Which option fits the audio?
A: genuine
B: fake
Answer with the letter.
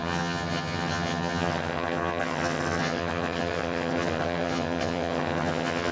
B